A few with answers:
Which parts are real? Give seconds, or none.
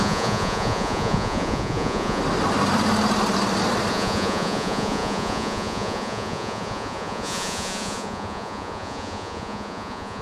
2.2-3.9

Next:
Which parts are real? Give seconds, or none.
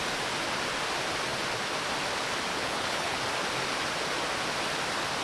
0.0-2.5; 3.2-5.2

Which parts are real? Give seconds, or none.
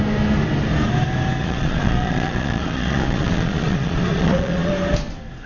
0.0-1.4; 4.7-5.5